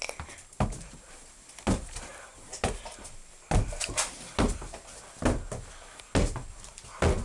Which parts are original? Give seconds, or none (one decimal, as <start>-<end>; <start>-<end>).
0.0-7.2